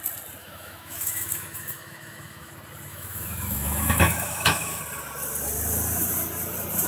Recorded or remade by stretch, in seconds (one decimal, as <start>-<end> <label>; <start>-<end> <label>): 0.0-0.4 recorded; 0.4-2.5 remade; 2.5-2.9 recorded; 2.9-4.8 remade; 4.8-6.9 recorded